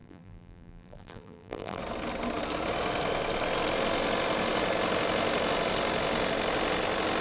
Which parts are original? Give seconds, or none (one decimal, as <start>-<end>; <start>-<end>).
1.8-7.2